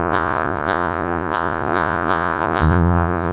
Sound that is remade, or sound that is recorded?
remade